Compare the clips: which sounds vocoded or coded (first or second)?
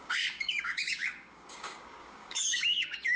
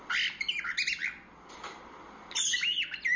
first